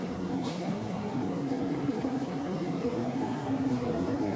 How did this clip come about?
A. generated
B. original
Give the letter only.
A